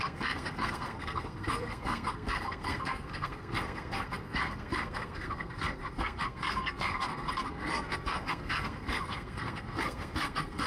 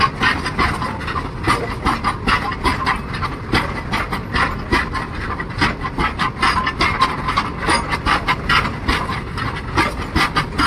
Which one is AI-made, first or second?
first